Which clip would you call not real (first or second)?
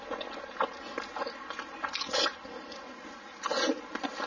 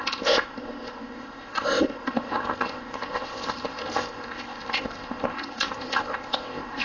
second